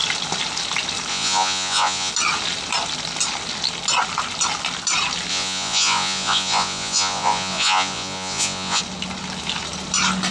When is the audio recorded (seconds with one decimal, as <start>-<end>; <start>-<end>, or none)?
0.0-1.1; 2.1-5.3; 8.8-10.3